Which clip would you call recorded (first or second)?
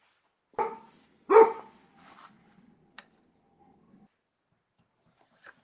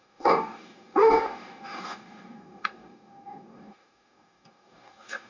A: first